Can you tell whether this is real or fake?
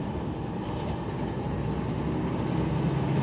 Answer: real